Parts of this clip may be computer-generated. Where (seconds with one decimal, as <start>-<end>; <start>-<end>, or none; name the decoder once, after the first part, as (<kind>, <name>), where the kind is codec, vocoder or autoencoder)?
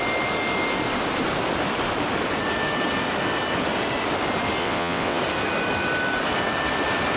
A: 4.6-5.2 (vocoder, WaveNeXt)